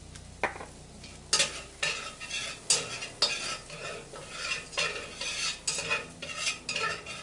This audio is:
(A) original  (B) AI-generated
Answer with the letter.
A